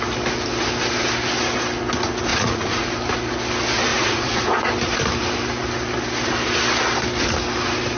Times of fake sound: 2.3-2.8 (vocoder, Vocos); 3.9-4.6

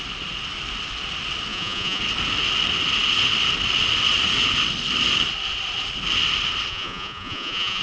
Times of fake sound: 1.5-2.0 (vocoder, Vocos); 6.7-7.8

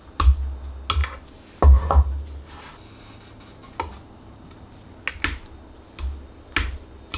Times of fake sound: none

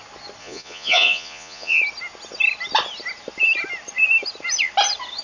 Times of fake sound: 0.4-1.8 (vocoder, Vocos)